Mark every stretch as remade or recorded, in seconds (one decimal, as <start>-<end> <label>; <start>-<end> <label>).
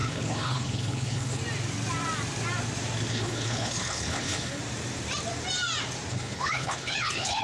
0.0-1.4 remade; 1.4-3.1 recorded; 3.1-4.6 remade; 4.6-6.1 recorded; 6.1-7.4 remade